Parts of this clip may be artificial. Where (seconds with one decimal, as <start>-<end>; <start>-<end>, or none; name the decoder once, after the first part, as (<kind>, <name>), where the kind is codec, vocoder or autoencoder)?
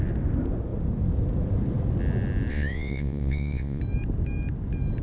2.5-3.8 (vocoder, Vocos)